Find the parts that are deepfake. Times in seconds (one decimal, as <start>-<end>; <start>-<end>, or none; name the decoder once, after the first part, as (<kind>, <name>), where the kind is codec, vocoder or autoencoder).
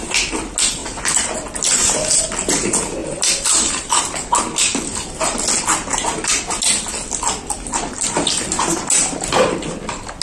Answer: 0.8-2.2 (vocoder, BigVGAN v2); 3.0-4.0